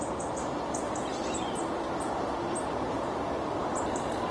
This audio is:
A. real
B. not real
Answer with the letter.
A